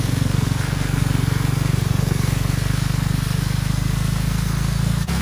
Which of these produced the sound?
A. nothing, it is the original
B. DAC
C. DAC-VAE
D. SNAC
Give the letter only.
D